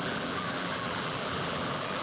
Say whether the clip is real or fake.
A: fake